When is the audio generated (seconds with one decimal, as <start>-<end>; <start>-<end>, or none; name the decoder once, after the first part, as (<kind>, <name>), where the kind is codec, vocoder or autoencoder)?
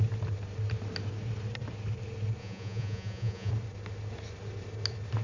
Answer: 2.4-3.5 (vocoder, Vocos)